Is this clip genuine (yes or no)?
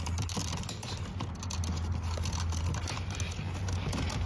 yes